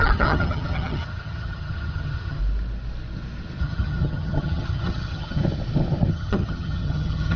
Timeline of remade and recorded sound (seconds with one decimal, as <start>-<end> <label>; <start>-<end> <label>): 0.0-2.4 remade; 2.4-3.6 recorded; 3.6-5.4 remade; 5.4-6.1 recorded; 6.1-7.4 remade